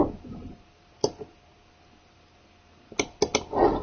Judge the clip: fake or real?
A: real